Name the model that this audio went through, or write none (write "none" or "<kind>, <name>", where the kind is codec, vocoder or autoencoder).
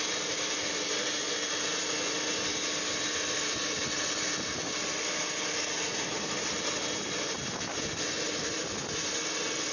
none